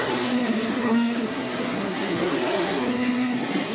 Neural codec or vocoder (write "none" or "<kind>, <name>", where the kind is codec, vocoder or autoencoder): codec, SNAC